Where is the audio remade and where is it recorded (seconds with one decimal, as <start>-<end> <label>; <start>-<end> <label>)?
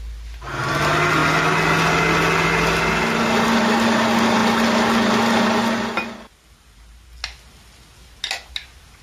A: 0.0-9.0 recorded